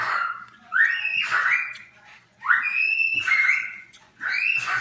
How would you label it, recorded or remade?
remade